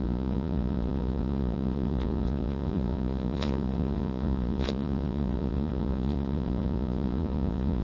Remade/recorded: remade